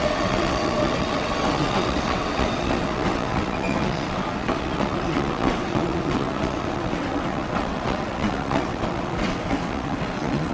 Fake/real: fake